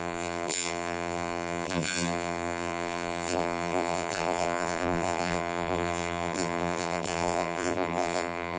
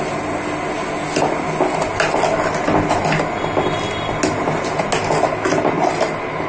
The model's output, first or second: first